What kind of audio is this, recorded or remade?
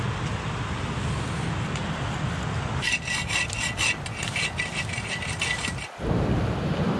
recorded